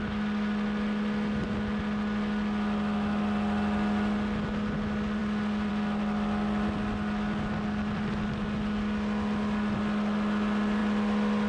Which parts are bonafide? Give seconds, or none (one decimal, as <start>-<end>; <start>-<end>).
0.0-11.5